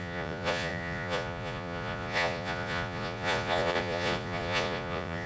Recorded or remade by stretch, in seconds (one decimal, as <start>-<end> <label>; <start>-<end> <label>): 0.0-5.3 remade